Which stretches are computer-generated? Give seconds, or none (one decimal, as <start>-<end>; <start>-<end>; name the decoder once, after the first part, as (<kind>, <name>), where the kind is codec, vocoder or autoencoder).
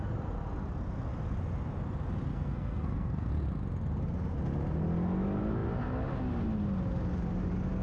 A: 2.3-3.3 (codec, SNAC)